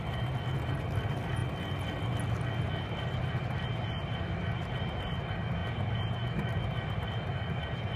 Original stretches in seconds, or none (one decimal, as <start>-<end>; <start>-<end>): 0.0-5.6; 6.1-8.0